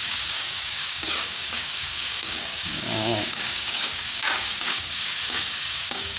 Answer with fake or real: fake